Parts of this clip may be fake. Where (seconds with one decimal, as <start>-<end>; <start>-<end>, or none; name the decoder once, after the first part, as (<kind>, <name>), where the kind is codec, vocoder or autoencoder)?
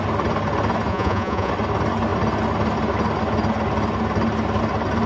0.9-1.5 (vocoder, Vocos)